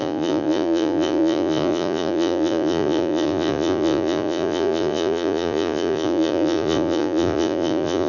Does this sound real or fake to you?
fake